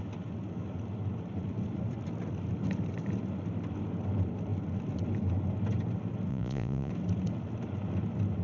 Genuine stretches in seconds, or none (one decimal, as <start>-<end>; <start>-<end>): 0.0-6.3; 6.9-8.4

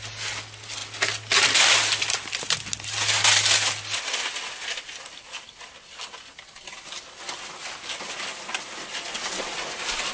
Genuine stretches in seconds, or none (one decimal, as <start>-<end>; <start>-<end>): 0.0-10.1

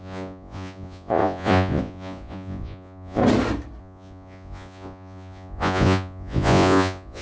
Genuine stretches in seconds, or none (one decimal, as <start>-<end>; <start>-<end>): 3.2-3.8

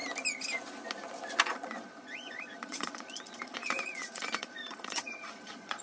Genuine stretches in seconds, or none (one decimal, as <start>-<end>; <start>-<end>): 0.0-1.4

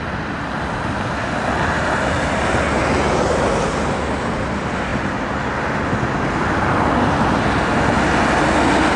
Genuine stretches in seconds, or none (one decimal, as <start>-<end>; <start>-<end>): 0.0-9.0